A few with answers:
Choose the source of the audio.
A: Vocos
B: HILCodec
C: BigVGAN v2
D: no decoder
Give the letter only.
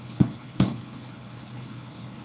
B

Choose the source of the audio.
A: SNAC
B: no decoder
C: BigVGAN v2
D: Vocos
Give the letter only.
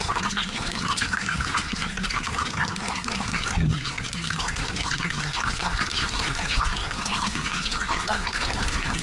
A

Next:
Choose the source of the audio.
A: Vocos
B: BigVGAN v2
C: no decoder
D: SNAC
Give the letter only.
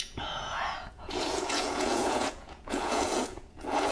A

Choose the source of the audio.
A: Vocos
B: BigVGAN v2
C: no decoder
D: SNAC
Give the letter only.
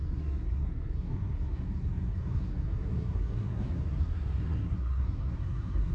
D